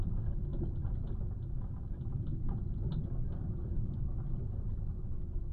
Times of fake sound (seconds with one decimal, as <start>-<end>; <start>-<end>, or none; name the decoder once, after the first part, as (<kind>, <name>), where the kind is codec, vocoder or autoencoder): none